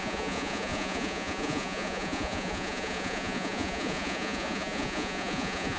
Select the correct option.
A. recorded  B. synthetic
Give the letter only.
B